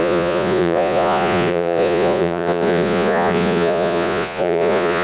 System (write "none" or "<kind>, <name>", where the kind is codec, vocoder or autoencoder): vocoder, Vocos